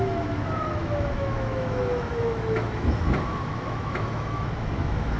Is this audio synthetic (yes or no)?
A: yes